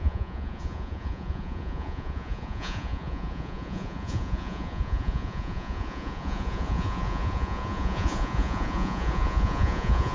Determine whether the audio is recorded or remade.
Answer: remade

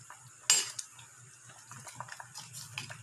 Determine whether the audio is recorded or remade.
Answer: recorded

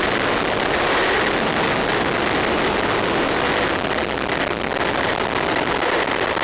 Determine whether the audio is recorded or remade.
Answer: recorded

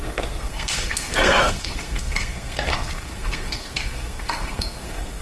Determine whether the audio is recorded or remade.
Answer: remade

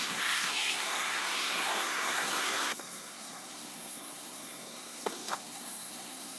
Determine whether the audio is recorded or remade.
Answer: remade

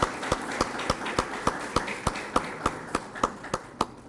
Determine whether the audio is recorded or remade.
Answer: recorded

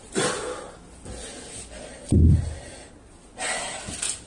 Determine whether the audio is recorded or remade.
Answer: recorded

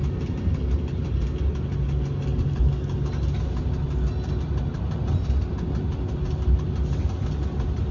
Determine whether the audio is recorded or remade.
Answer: recorded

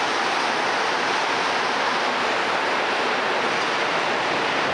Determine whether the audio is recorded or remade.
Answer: recorded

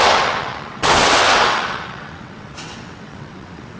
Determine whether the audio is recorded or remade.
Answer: remade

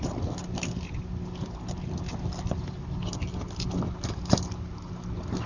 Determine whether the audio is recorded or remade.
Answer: recorded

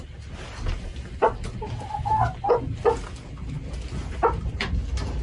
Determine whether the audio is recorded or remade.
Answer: recorded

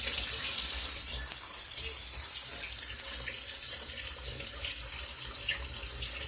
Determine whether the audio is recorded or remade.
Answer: recorded